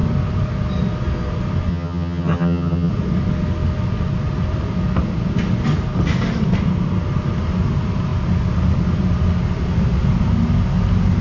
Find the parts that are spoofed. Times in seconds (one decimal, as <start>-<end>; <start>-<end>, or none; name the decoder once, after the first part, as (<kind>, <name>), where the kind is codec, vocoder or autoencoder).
1.7-2.9 (vocoder, HiFi-GAN)